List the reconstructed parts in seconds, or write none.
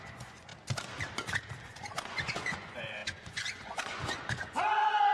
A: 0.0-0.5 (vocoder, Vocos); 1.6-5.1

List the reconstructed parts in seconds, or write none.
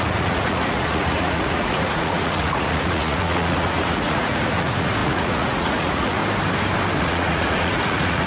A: 0.0-6.2 (vocoder, Vocos); 7.0-8.3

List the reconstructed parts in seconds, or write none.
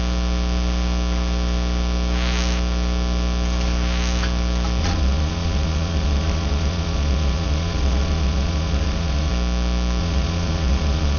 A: 4.8-9.3 (vocoder, Vocos); 10.0-11.2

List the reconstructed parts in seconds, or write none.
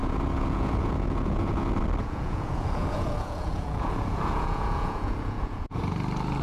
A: 0.0-1.6 (vocoder, Vocos); 2.0-5.8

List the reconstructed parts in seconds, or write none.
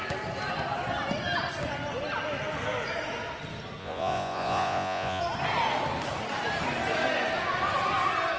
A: 3.8-5.2 (vocoder, Vocos)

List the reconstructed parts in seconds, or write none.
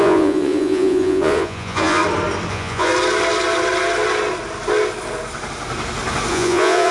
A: 0.0-2.0 (vocoder, Vocos); 2.5-2.9; 6.3-6.9